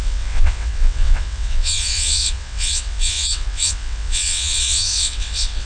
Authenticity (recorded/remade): remade